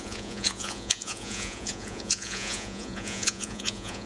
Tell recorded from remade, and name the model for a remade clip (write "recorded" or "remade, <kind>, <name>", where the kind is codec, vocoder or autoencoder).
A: remade, vocoder, Vocos